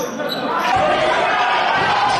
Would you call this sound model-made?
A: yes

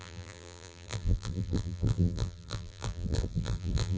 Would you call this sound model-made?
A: yes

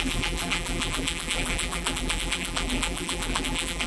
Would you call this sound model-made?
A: yes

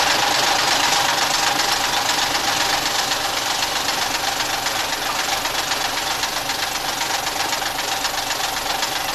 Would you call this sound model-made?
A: no